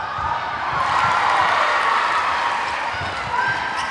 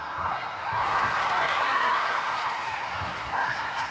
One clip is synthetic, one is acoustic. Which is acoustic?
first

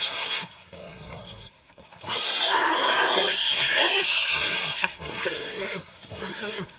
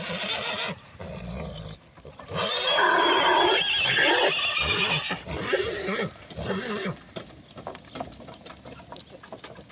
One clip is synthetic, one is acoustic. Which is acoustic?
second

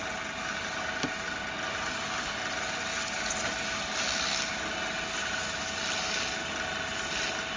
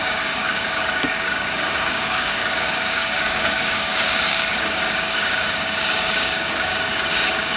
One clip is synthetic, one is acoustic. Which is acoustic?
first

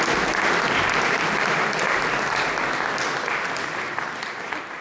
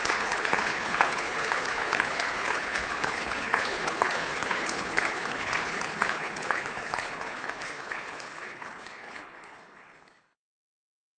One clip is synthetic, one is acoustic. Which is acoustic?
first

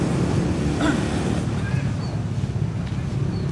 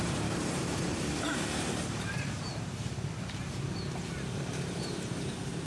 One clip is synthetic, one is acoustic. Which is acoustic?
first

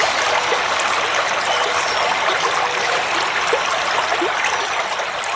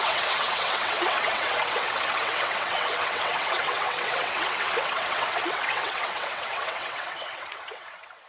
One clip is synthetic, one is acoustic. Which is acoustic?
first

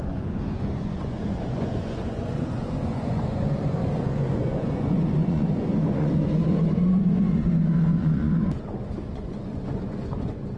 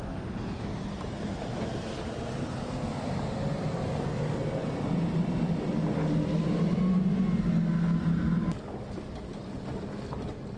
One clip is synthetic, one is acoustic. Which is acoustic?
second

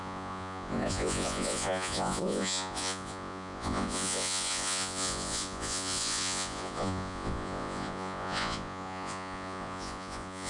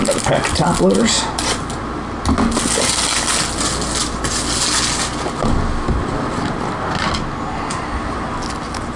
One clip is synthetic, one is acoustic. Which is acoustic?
second